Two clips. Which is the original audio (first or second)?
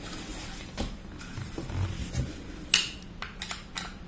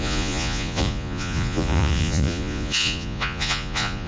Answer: first